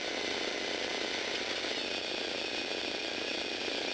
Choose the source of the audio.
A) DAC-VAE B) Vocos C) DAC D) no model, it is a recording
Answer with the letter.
D